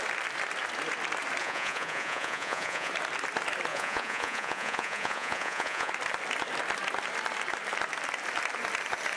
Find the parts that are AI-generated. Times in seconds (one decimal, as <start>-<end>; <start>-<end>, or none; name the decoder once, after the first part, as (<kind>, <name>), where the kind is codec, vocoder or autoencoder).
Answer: 1.4-2.9 (vocoder, Vocos); 3.7-5.9